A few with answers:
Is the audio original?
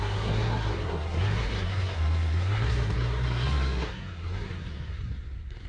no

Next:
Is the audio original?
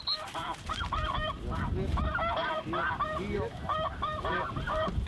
yes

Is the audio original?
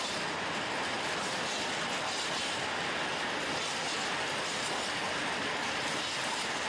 yes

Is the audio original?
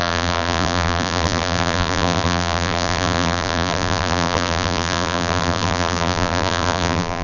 no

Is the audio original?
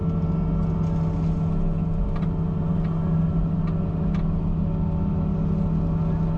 yes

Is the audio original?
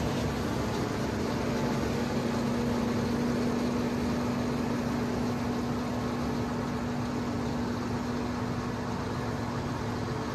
yes